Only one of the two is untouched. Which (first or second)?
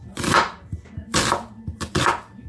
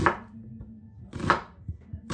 second